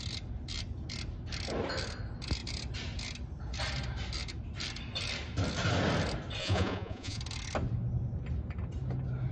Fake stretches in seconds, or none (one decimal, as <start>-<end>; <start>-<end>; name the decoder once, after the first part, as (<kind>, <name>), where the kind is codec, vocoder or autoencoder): 6.4-7.2 (vocoder, Vocos)